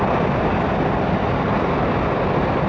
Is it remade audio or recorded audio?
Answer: recorded